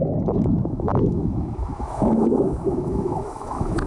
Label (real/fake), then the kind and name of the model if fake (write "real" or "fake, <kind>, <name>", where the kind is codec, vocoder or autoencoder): fake, autoencoder, DAC-VAE